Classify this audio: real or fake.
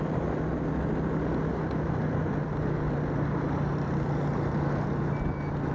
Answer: real